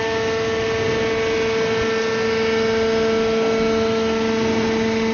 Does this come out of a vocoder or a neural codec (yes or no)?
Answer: no